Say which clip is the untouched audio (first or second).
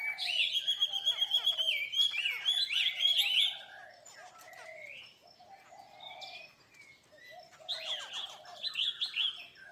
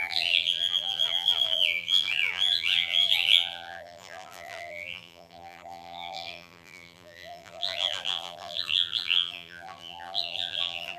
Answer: first